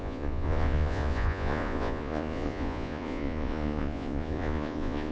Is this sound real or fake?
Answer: fake